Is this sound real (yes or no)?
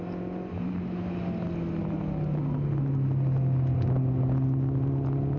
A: yes